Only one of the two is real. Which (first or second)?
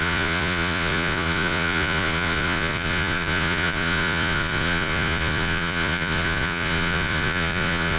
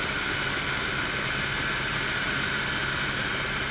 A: second